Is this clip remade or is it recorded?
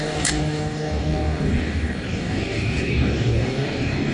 remade